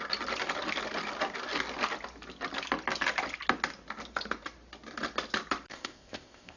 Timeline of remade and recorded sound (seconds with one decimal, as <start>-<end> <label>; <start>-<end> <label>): 0.0-5.7 recorded; 5.7-6.6 remade